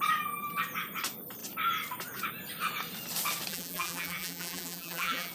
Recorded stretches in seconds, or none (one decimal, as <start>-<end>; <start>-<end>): 0.0-3.5